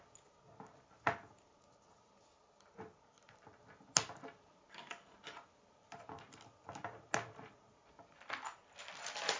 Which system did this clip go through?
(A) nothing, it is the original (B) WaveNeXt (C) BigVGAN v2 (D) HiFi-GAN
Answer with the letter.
A